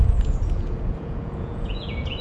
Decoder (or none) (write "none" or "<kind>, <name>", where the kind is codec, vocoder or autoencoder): vocoder, Vocos